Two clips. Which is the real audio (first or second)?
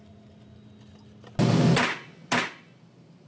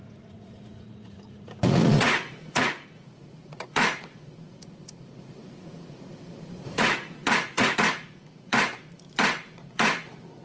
first